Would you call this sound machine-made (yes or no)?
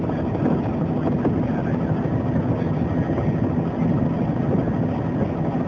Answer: no